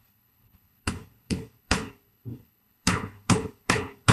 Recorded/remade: remade